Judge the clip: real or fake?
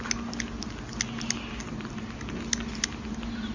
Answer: real